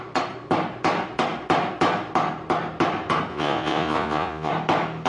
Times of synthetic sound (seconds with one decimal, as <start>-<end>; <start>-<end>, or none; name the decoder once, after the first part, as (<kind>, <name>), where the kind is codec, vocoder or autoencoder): 3.3-4.5 (vocoder, Vocos)